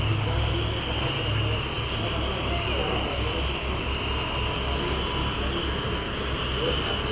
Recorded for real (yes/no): yes